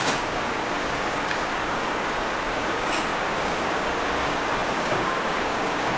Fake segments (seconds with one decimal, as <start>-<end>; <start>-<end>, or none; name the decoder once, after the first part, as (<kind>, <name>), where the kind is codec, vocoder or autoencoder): 0.0-6.0 (codec, DAC)